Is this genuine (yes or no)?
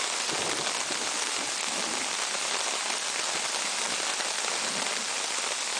yes